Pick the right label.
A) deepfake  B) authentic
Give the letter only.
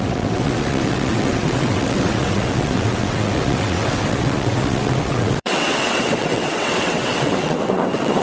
A